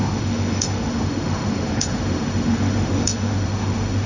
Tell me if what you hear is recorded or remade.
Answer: remade